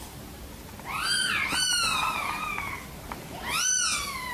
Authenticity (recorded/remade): recorded